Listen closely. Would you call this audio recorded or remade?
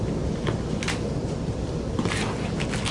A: recorded